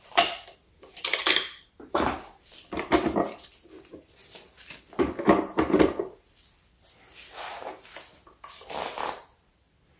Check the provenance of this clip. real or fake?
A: fake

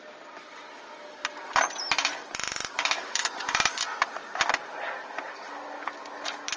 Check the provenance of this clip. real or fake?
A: fake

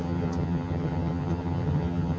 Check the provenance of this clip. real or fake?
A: fake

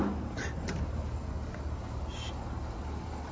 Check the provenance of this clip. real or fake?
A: real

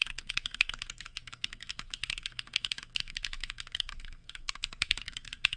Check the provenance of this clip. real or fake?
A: fake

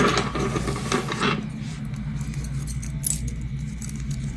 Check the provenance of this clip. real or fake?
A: real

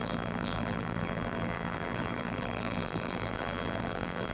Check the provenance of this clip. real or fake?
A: fake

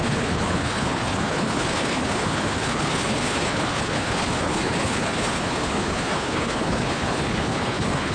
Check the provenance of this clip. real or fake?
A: fake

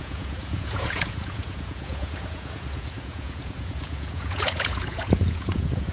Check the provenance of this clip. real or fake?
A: fake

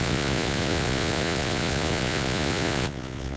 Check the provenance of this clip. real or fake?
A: fake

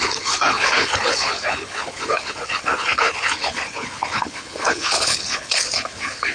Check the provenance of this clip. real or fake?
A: fake